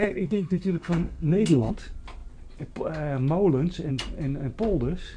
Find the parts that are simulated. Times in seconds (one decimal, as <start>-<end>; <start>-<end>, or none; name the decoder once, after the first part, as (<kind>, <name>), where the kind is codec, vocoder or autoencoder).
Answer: 0.0-1.7 (codec, SNAC)